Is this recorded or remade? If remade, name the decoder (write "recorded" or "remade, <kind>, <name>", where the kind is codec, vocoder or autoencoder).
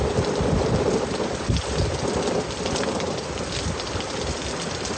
recorded